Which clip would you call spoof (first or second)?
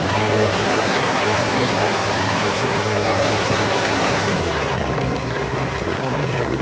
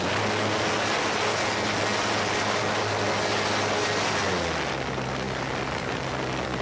first